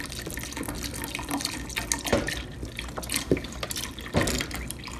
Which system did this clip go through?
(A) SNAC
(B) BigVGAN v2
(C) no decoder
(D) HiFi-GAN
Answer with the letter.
C